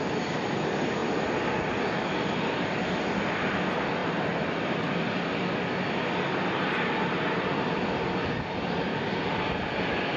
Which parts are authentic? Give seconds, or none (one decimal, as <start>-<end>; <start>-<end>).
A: 0.0-4.0; 5.6-10.2